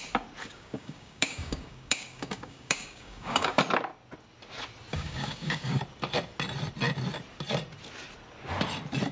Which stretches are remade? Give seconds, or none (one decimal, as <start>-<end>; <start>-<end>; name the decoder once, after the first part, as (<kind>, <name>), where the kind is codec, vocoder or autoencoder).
0.4-3.6 (codec, DAC); 4.9-5.8